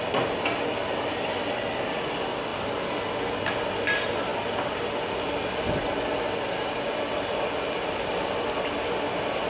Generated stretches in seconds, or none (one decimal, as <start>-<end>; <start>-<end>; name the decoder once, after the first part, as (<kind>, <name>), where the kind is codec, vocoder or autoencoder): none